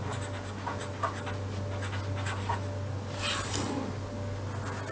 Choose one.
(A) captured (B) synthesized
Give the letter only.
A